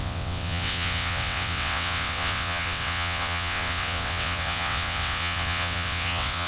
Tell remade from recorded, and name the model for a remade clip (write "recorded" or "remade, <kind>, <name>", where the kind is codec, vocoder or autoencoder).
remade, vocoder, WaveNeXt